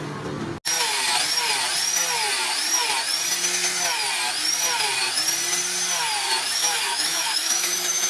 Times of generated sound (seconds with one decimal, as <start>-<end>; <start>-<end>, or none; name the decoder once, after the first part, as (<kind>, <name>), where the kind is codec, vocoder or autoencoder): 6.6-8.1 (autoencoder, DAC-VAE)